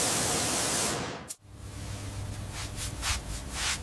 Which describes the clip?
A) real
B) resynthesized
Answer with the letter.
A